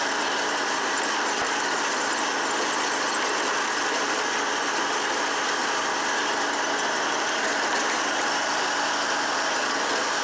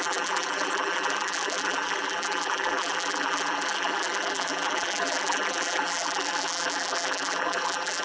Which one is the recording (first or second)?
first